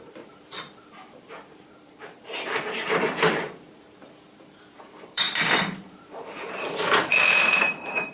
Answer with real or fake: fake